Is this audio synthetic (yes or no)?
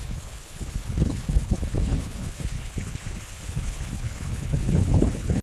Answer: yes